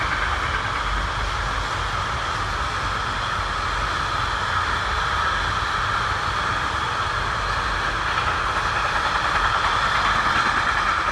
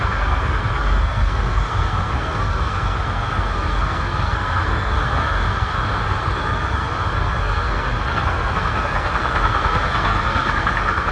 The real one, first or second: first